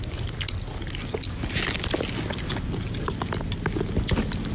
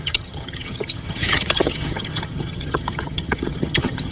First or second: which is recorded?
first